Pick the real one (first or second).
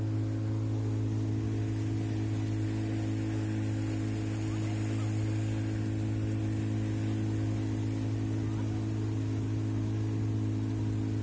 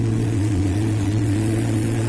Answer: first